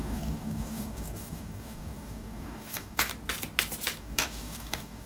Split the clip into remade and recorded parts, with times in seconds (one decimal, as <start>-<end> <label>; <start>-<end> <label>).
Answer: 0.0-3.1 remade; 3.1-4.0 recorded; 4.0-5.1 remade